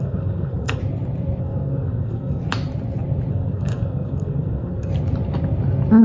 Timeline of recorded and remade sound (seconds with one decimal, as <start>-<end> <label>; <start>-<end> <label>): 0.0-0.8 remade; 0.8-1.4 recorded; 1.4-2.4 remade; 2.4-3.3 recorded; 3.3-4.9 remade; 4.9-6.0 recorded